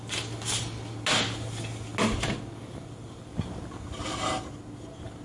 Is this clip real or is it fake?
real